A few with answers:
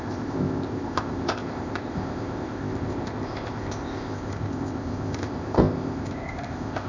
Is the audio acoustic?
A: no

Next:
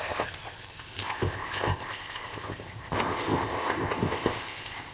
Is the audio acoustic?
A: no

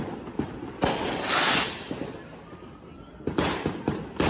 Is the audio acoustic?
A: yes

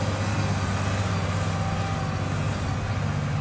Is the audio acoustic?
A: yes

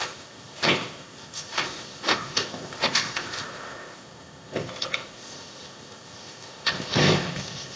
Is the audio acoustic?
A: no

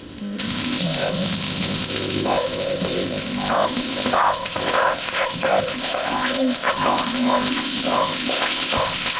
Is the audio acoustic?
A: no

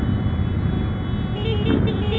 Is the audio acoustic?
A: yes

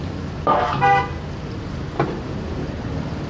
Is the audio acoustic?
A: yes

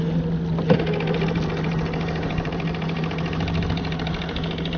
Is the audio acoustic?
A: yes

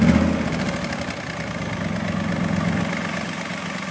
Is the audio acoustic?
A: yes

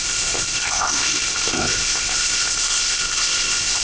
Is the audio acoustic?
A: no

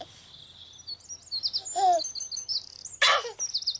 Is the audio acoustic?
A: yes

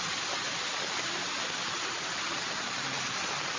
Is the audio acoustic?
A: yes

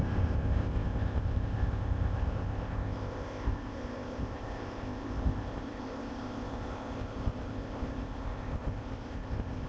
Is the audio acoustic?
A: no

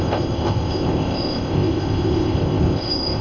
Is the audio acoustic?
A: no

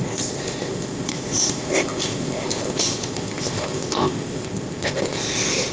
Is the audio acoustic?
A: no